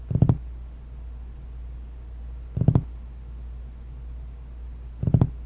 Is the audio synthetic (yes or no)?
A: no